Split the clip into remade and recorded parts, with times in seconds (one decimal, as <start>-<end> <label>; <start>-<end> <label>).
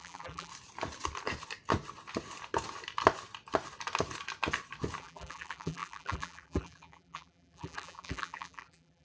0.0-0.5 remade; 0.5-5.0 recorded; 5.0-9.0 remade